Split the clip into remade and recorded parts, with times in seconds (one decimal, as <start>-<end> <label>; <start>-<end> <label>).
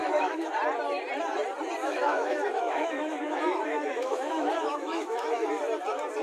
0.0-0.5 remade; 0.5-1.8 recorded; 1.8-5.5 remade; 5.5-6.2 recorded